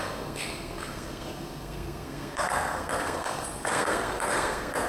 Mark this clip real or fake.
fake